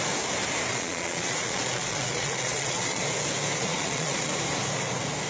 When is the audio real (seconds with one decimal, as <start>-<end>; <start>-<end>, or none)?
0.0-0.7; 3.0-3.6; 4.3-5.3